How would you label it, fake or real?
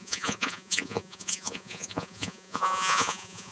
fake